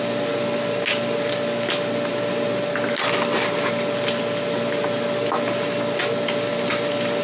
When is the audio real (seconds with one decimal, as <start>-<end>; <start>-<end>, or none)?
0.0-7.2